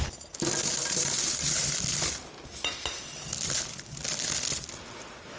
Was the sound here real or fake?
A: real